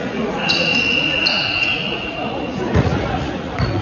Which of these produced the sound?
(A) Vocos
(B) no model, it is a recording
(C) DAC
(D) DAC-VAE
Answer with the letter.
A